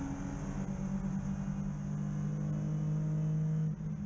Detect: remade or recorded recorded